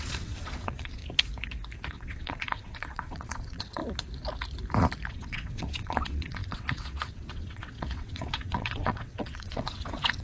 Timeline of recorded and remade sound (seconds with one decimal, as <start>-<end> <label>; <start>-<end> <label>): 0.0-1.0 remade; 1.0-1.9 recorded; 1.9-3.8 remade; 3.8-5.1 recorded; 5.1-10.2 remade